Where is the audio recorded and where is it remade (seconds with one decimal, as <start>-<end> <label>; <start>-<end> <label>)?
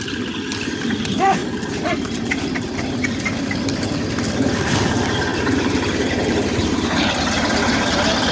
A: 0.0-1.4 recorded; 1.4-3.2 remade; 3.2-5.3 recorded; 5.3-7.3 remade; 7.3-8.3 recorded